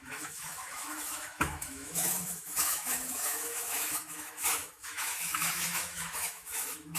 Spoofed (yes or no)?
yes